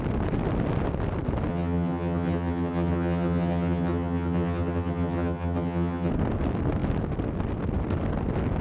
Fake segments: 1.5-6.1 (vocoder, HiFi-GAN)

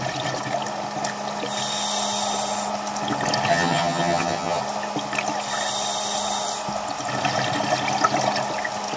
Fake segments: 3.5-4.6 (vocoder, HiFi-GAN)

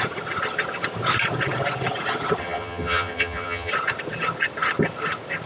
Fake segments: 2.4-3.7 (vocoder, HiFi-GAN)